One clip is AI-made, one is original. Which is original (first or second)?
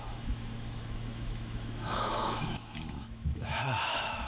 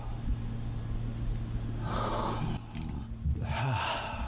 second